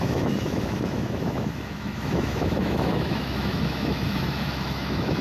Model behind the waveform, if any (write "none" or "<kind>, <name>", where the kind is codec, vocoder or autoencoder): autoencoder, DAC-VAE